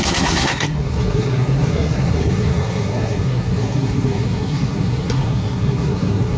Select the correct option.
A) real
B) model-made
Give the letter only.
B